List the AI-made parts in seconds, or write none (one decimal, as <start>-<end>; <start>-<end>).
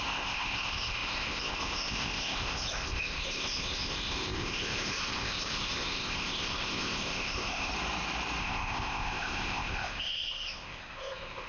0.0-7.7; 8.4-11.5